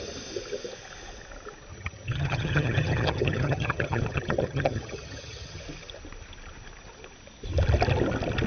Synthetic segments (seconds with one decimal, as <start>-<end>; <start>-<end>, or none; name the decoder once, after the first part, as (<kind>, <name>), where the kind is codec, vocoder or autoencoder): 1.7-5.6 (vocoder, HiFi-GAN)